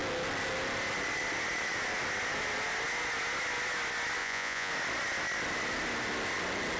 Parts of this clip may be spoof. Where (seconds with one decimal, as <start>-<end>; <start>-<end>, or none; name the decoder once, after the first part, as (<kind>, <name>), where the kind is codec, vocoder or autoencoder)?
4.2-4.7 (vocoder, Vocos)